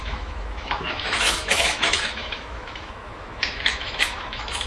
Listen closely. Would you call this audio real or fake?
fake